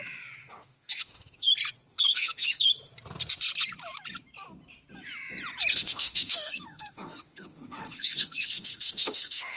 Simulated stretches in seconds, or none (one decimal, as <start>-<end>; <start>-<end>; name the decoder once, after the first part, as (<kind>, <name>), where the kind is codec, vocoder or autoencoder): 0.4-1.5 (autoencoder, DAC-VAE); 1.9-2.6; 5.7-9.6